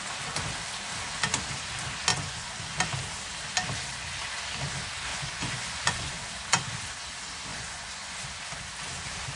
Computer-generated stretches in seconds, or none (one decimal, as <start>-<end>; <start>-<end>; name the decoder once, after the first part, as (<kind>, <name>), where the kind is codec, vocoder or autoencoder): 2.1-2.7 (vocoder, Vocos); 5.1-6.1; 7.5-8.2

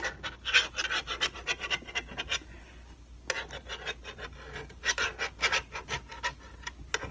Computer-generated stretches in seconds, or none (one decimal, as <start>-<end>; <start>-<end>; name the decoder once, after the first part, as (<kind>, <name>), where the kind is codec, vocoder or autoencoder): none